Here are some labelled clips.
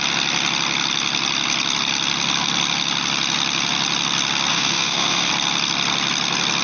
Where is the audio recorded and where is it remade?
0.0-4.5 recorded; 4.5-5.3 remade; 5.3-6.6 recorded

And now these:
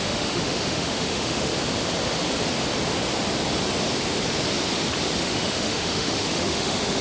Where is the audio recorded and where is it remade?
0.0-1.5 remade; 1.5-5.2 recorded; 5.2-7.0 remade

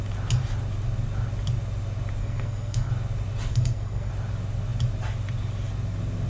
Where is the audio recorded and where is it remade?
0.0-2.2 recorded; 2.2-2.9 remade; 2.9-3.5 recorded; 3.5-4.1 remade; 4.1-6.3 recorded

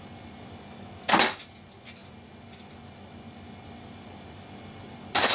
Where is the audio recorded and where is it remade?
0.0-5.3 recorded

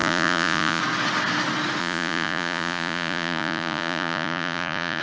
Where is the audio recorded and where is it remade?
0.0-0.8 remade; 0.8-1.8 recorded; 1.8-5.0 remade